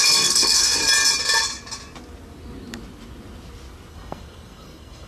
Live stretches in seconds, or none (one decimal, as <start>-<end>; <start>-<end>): 0.8-3.9